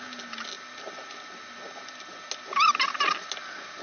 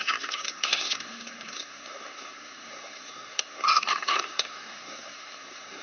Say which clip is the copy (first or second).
second